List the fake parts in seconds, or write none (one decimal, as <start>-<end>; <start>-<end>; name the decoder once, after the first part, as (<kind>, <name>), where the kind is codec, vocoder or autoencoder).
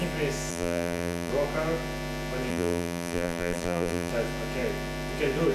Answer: 0.5-1.3 (vocoder, BigVGAN v2); 2.5-4.1